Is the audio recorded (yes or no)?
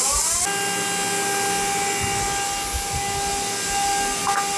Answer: yes